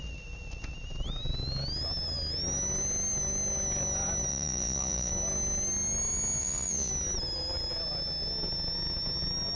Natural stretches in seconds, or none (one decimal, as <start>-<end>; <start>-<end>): 0.0-4.3; 5.1-6.4; 6.9-9.6